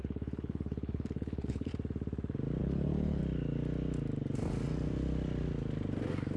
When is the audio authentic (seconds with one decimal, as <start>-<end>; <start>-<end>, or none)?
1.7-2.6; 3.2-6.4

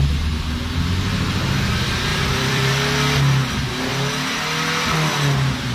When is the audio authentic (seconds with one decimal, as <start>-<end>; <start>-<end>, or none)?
0.0-2.1; 2.7-5.7

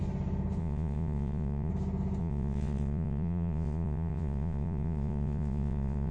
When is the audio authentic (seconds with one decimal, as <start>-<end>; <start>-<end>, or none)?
0.0-0.6; 1.7-2.2

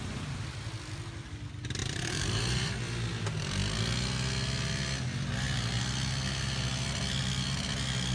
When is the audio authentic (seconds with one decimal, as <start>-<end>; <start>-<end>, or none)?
0.0-1.8; 2.7-8.1

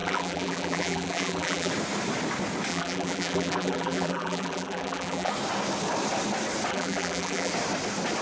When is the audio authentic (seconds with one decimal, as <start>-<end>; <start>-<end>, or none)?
1.7-2.7; 5.3-6.7; 7.5-8.2